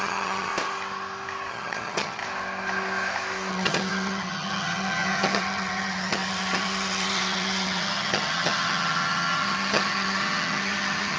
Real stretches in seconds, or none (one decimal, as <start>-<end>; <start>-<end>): 0.5-1.5; 2.2-3.5